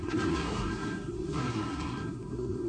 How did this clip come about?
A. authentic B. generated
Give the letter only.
B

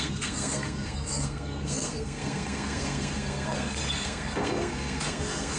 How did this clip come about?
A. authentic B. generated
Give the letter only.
B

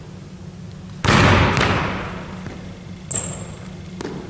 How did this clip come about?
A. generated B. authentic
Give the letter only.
B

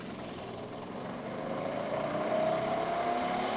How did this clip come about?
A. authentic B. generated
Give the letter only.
A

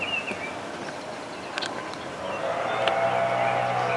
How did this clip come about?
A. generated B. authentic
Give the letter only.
B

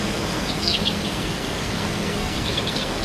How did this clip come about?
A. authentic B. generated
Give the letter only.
B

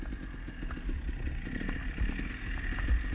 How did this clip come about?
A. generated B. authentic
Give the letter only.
B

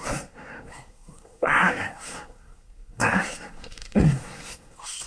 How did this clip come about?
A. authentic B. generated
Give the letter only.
B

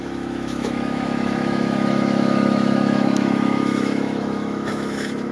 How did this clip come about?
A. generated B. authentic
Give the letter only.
A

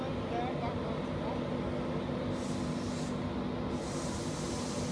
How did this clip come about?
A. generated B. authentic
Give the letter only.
B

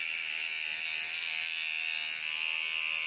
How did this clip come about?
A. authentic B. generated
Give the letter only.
A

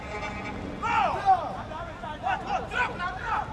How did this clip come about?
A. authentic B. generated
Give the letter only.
A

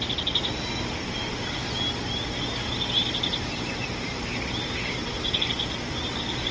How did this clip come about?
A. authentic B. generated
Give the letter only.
A